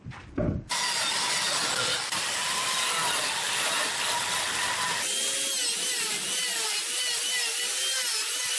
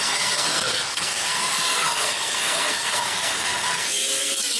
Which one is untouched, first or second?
first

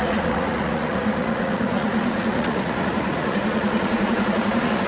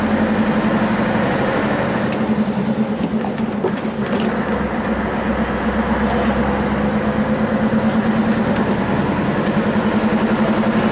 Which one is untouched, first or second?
second